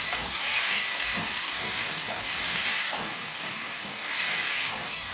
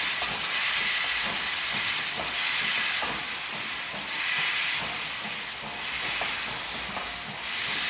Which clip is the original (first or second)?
second